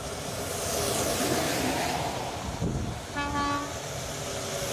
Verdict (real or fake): real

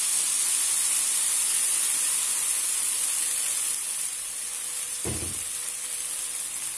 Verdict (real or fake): real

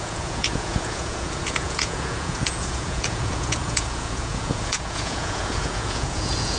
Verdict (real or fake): fake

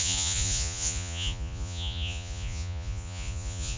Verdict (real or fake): fake